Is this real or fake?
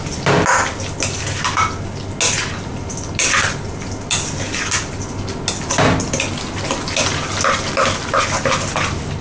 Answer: real